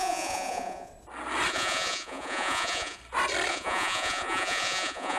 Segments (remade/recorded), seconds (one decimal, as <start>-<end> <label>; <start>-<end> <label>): 0.0-0.9 remade; 0.9-1.5 recorded; 1.5-3.0 remade; 3.0-3.5 recorded; 3.5-5.2 remade